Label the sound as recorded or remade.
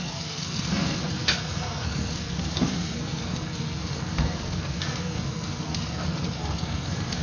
remade